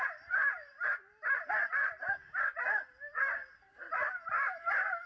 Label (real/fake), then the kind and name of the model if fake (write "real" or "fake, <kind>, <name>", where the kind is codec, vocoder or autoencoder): fake, vocoder, BigVGAN v2